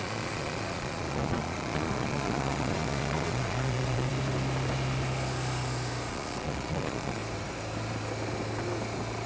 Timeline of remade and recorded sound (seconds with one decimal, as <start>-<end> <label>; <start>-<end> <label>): 0.0-4.1 remade; 4.1-6.1 recorded; 6.1-7.2 remade; 7.2-9.3 recorded